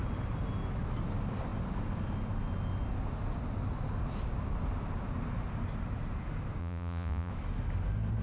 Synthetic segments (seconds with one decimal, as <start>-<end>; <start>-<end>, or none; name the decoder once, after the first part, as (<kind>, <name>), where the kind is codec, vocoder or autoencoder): 6.6-7.3 (vocoder, Vocos)